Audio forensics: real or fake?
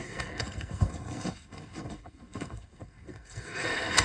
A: fake